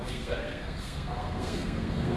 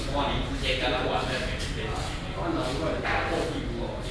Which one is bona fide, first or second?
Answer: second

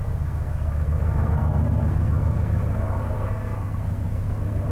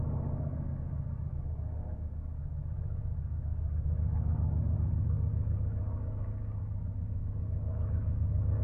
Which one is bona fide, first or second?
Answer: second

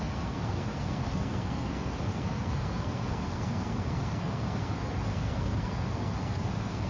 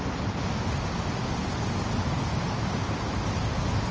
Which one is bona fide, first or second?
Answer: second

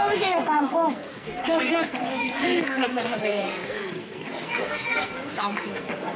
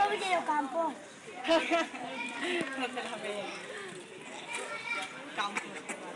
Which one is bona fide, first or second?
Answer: second